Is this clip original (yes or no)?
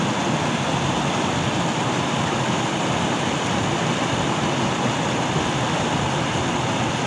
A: yes